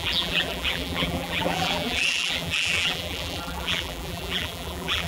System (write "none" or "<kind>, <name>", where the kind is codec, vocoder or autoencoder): vocoder, BigVGAN v2